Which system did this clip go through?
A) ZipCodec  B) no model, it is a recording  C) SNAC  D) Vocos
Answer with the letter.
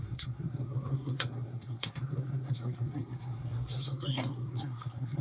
C